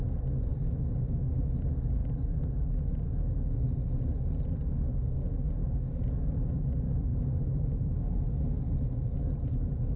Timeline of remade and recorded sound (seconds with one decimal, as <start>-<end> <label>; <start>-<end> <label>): 0.0-5.6 recorded; 5.6-6.5 remade; 6.5-7.1 recorded; 7.1-9.2 remade; 9.2-10.0 recorded

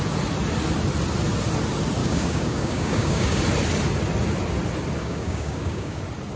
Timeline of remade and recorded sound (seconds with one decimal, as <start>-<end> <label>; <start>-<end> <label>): 0.0-2.0 recorded; 2.0-3.4 remade; 3.4-5.0 recorded; 5.0-6.0 remade; 6.0-6.4 recorded

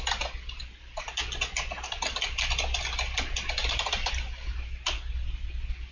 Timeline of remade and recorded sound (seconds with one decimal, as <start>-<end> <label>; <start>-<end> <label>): 0.0-3.6 recorded; 3.6-4.1 remade; 4.1-5.9 recorded